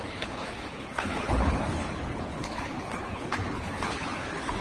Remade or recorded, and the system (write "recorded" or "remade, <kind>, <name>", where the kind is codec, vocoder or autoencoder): remade, codec, HILCodec